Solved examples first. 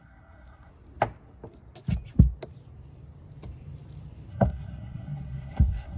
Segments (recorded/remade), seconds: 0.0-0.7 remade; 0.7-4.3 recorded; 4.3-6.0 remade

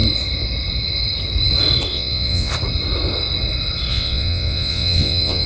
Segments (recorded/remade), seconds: 0.0-1.9 recorded; 1.9-2.5 remade; 2.5-3.9 recorded; 3.9-5.5 remade